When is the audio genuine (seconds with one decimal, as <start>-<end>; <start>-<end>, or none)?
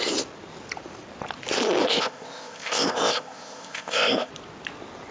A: 0.0-1.8; 4.3-5.1